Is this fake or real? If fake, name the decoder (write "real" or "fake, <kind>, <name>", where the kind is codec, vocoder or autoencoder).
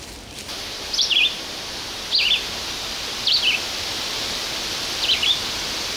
fake, vocoder, BigVGAN v2